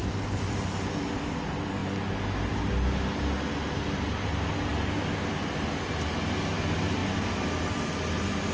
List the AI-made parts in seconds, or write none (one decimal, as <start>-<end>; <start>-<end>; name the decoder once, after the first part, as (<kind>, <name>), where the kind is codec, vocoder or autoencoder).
0.0-1.1 (vocoder, BigVGAN v2)